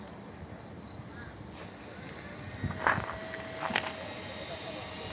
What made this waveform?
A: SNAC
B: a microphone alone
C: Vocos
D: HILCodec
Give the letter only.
B